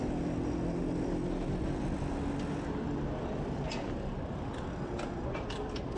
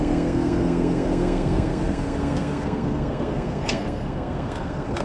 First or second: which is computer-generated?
second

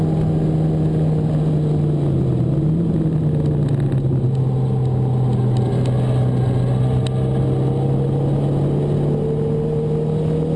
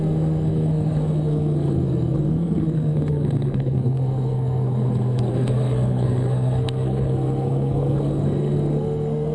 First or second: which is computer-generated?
second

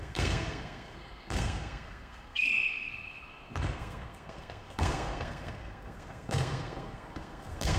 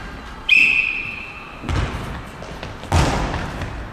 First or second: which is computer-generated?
first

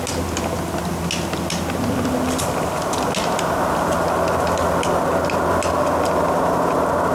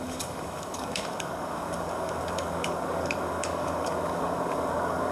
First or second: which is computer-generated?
second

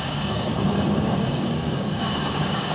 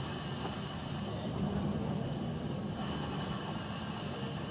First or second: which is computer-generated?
first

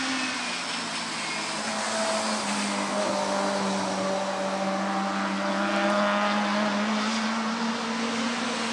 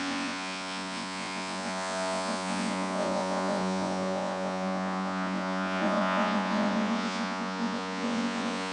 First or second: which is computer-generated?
second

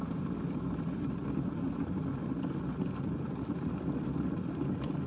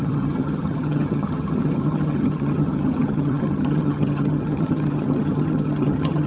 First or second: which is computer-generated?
second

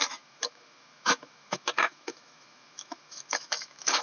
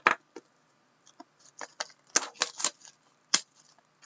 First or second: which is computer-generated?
first